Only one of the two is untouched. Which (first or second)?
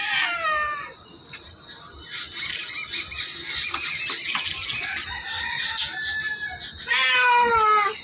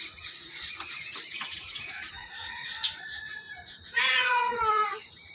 first